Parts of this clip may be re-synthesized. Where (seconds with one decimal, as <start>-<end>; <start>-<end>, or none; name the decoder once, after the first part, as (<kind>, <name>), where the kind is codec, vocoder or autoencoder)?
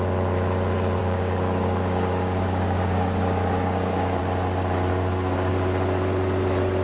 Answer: 1.0-4.2 (codec, DAC); 4.9-5.5